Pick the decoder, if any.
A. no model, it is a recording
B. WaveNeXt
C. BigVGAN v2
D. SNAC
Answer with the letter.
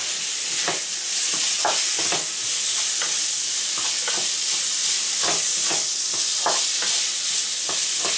C